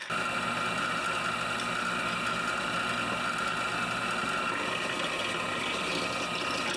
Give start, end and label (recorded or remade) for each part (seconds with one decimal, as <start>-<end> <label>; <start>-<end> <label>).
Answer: 0.0-6.8 recorded